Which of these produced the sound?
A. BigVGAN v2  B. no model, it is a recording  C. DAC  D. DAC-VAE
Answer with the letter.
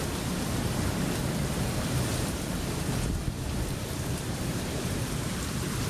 A